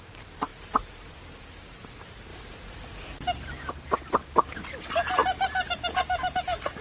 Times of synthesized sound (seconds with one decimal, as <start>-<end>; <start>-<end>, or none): none